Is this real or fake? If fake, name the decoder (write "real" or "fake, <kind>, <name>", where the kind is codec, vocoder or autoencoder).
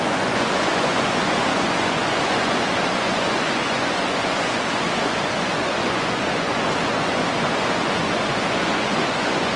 fake, vocoder, Vocos